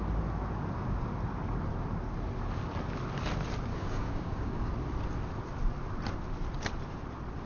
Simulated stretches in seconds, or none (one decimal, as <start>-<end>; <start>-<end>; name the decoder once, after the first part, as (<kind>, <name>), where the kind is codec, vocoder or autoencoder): 3.7-4.7 (codec, DAC)